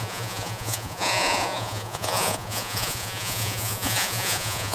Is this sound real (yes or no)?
no